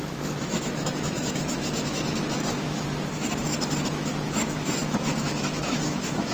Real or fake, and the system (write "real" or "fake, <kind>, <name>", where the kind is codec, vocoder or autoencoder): fake, autoencoder, DAC-VAE